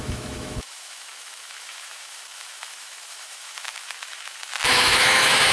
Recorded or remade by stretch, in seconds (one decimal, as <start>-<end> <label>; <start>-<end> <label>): 0.0-5.5 remade